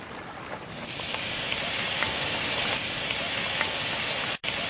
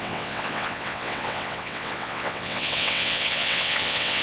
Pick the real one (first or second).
first